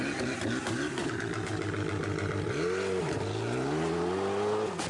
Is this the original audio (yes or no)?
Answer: yes